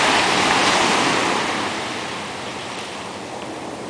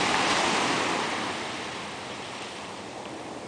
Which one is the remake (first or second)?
second